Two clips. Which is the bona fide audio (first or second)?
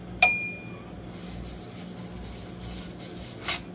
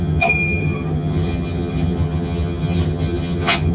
first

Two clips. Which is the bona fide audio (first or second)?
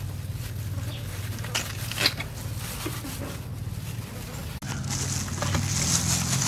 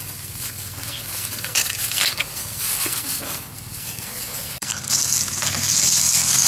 first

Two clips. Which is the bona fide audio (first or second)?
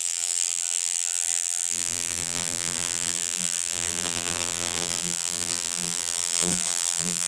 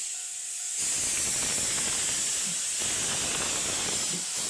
second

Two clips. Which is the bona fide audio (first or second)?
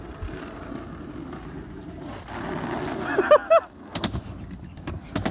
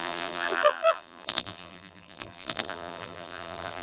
first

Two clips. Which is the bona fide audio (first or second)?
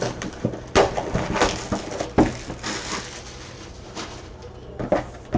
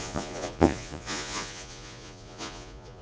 first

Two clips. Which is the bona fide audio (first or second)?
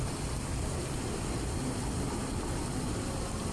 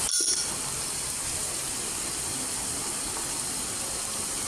first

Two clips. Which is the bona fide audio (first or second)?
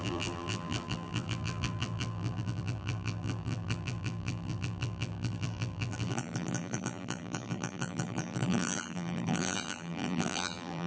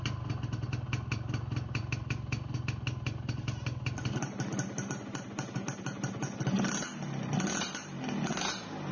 second